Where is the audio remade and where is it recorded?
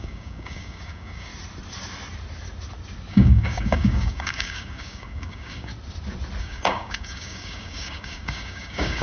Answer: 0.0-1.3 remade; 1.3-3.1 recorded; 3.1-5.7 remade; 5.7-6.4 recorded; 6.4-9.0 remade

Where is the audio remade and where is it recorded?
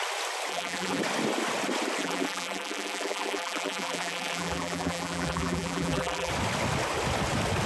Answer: 0.0-0.5 recorded; 0.5-1.0 remade; 1.0-2.0 recorded; 2.0-6.3 remade; 6.3-7.7 recorded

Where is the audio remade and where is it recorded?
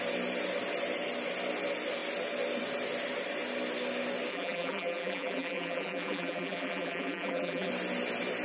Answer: 0.0-4.3 recorded; 4.3-7.7 remade; 7.7-8.4 recorded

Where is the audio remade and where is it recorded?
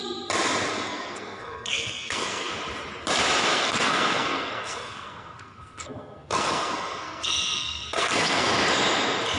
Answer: 0.0-0.7 recorded; 0.7-2.5 remade; 2.5-3.5 recorded; 3.5-8.5 remade; 8.5-9.4 recorded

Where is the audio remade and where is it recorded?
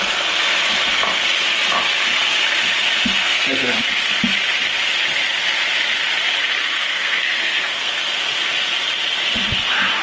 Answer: 0.0-3.2 recorded; 3.2-3.8 remade; 3.8-6.6 recorded; 6.6-8.0 remade; 8.0-10.0 recorded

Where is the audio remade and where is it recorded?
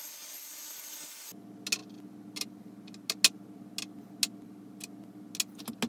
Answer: 0.0-0.4 recorded; 0.4-1.3 remade; 1.3-5.9 recorded